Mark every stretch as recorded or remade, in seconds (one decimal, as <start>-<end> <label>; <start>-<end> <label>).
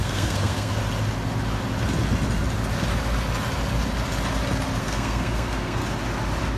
0.0-0.8 remade; 0.8-4.8 recorded; 4.8-5.8 remade; 5.8-6.6 recorded